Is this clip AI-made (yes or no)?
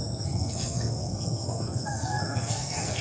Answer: yes